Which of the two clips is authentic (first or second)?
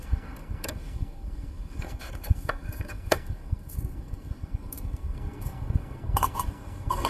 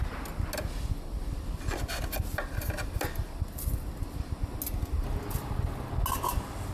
second